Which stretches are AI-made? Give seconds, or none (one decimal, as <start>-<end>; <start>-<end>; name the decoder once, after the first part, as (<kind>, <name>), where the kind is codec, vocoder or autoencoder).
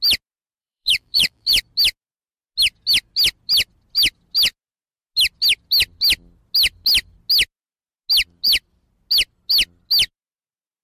0.6-1.6 (vocoder, BigVGAN v2)